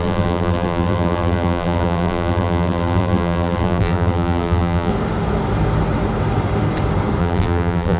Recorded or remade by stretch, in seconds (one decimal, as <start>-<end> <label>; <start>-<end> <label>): 0.0-4.9 remade; 4.9-7.2 recorded; 7.2-8.0 remade